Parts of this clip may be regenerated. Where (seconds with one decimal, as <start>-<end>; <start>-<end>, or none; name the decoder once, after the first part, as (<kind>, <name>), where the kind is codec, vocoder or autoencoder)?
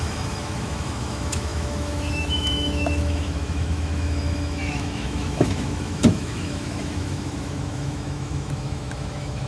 0.0-9.5 (autoencoder, DAC-VAE)